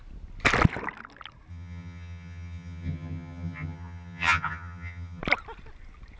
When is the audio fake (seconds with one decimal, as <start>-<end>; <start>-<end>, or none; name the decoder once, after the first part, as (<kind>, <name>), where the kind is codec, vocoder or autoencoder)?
1.5-5.2 (vocoder, HiFi-GAN)